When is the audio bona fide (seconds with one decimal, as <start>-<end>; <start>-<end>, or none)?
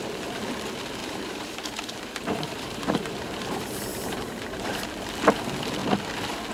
0.0-1.0; 3.4-3.9; 4.9-6.5